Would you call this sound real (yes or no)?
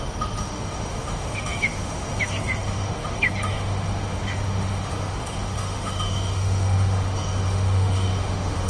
no